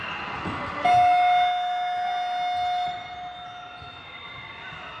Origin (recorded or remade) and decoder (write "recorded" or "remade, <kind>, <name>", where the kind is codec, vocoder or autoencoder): recorded